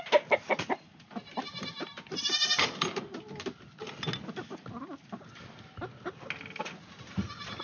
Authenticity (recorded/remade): recorded